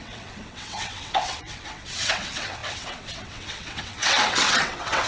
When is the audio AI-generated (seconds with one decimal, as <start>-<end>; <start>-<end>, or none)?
0.0-5.1

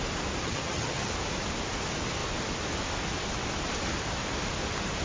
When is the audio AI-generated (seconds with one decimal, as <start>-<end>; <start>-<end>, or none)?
0.4-1.1

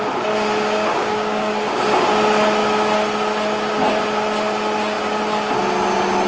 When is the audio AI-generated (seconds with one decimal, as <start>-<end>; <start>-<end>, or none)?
0.9-1.5

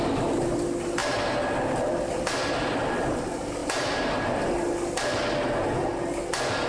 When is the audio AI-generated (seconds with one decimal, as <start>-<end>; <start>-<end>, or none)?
none

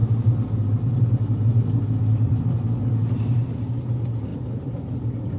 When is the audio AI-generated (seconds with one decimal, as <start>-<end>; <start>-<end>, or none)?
0.0-2.4; 4.3-5.0

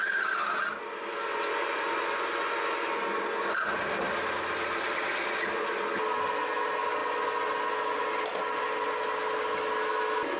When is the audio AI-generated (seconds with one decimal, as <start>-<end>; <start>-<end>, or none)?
none

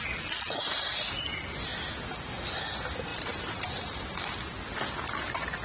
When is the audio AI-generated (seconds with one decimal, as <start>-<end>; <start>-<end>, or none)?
3.1-4.2